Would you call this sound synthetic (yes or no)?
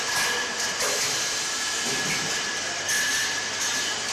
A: no